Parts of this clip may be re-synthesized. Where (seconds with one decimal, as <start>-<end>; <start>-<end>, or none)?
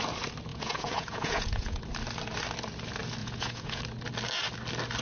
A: 0.5-1.8; 3.2-3.8